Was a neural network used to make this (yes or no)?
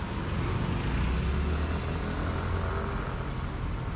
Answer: no